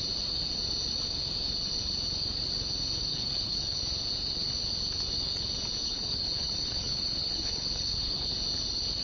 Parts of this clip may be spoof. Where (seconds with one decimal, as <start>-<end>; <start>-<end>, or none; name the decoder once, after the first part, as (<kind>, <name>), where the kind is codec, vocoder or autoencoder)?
3.1-3.8 (codec, HILCodec); 5.8-8.3